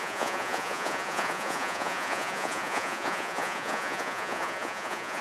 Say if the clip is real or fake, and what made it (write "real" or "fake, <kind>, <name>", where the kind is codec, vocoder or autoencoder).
fake, vocoder, Vocos